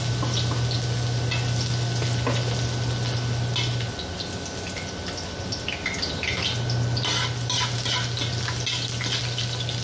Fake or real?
real